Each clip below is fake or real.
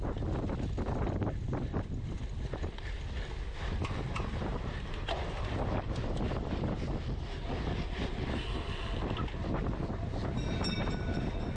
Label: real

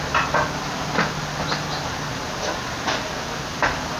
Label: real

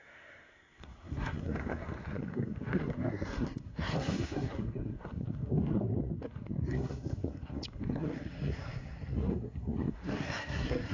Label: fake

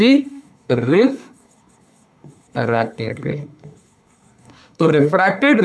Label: fake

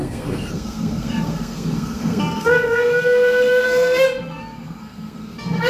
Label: fake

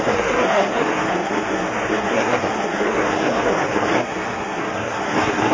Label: fake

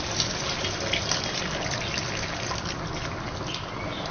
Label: real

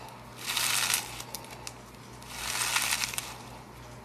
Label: real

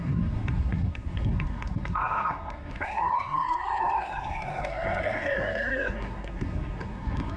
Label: fake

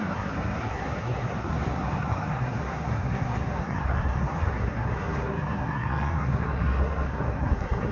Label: fake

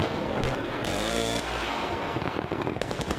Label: fake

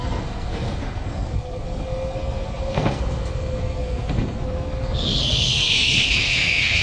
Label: fake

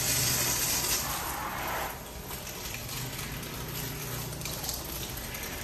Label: real